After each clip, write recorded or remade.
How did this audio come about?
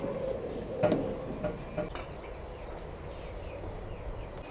recorded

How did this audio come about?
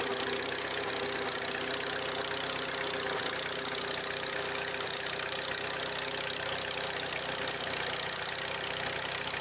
recorded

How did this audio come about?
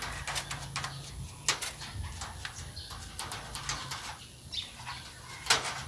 recorded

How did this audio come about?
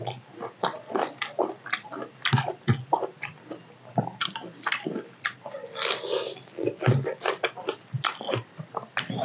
recorded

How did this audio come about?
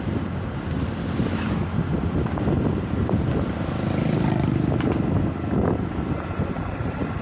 recorded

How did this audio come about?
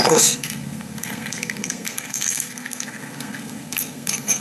remade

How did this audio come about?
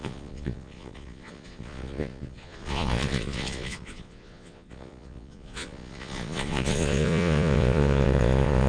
remade